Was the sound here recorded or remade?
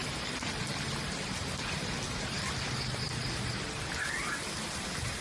recorded